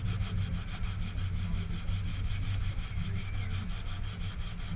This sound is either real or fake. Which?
real